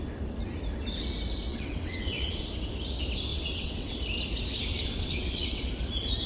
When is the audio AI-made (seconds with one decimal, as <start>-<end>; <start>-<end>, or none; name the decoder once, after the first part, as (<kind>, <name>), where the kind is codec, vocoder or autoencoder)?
1.5-2.4 (vocoder, WaveNeXt); 3.3-4.0; 4.7-5.7